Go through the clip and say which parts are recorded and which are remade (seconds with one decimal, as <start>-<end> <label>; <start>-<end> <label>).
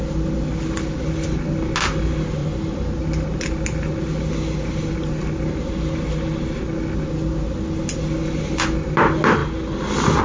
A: 0.0-2.4 recorded; 2.4-3.0 remade; 3.0-10.2 recorded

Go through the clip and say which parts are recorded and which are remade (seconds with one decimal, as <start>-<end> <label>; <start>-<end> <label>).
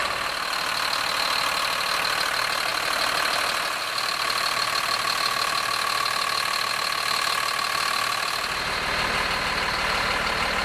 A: 0.0-10.6 recorded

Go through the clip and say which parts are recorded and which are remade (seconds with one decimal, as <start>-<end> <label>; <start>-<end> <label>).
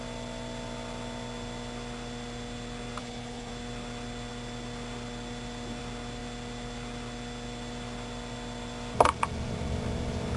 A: 0.0-3.0 recorded; 3.0-3.5 remade; 3.5-10.4 recorded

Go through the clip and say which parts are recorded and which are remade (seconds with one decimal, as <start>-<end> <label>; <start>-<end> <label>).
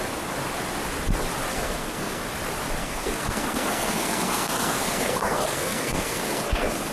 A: 0.0-1.5 recorded; 1.5-2.2 remade; 2.2-2.8 recorded; 2.8-6.9 remade